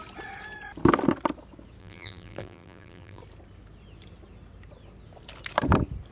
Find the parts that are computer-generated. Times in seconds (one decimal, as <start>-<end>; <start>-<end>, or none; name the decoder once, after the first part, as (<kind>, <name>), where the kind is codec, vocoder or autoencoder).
1.8-3.2 (vocoder, BigVGAN v2)